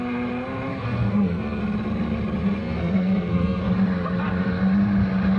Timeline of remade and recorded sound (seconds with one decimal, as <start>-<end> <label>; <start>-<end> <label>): 0.0-0.7 recorded; 0.7-1.6 remade; 1.6-2.6 recorded; 2.6-3.7 remade; 3.7-5.4 recorded